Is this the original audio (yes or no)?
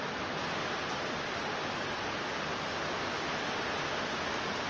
yes